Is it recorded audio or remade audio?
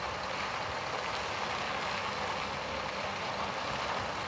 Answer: recorded